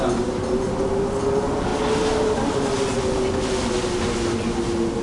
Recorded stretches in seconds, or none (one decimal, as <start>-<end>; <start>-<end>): 0.0-5.0